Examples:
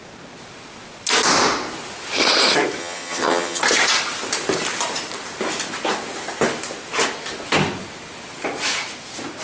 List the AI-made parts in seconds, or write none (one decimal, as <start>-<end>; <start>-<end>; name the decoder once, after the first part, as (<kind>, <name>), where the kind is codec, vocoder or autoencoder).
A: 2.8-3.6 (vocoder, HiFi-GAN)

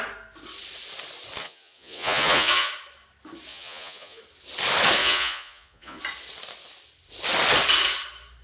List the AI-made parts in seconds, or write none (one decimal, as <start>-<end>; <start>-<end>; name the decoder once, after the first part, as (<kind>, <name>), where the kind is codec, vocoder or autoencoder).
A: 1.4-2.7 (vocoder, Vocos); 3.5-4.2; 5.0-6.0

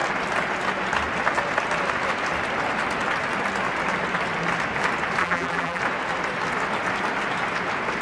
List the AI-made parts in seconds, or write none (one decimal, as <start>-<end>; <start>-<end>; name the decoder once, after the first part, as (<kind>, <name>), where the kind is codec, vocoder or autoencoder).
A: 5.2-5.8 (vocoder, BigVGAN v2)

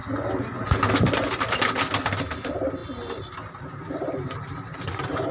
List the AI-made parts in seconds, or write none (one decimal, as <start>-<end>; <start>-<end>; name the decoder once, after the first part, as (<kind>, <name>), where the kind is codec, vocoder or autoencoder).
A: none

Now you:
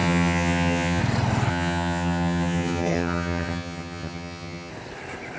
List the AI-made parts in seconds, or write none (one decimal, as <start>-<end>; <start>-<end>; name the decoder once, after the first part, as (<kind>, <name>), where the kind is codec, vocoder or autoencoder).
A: 0.0-1.0 (vocoder, HiFi-GAN); 1.5-4.7

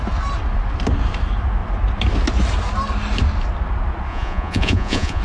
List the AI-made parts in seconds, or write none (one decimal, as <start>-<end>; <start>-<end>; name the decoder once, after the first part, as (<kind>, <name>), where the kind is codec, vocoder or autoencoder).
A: 4.1-5.2 (vocoder, Vocos)

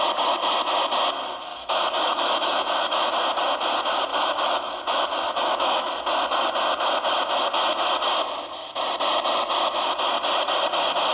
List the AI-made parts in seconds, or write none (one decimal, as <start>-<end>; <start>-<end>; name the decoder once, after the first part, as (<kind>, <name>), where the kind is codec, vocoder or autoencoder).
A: 1.5-3.1 (autoencoder, DAC-VAE); 4.1-5.9

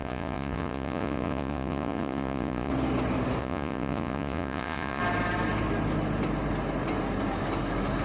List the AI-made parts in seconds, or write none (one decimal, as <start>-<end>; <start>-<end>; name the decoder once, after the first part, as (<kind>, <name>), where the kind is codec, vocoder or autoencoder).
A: 0.0-2.7 (vocoder, Vocos); 3.4-5.0